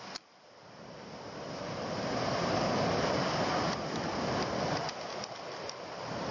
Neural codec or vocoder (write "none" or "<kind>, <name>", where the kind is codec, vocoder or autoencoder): none